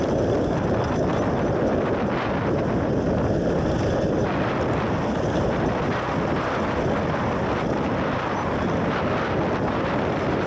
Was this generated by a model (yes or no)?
no